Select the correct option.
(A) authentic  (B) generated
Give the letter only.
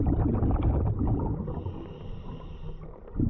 A